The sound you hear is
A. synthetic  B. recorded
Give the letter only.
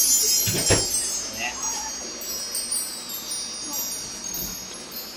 B